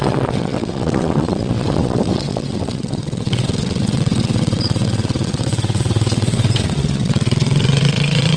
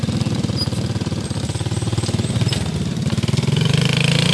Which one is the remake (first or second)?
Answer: first